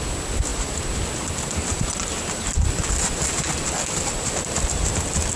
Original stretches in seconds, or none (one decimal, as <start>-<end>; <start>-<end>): 0.0-5.4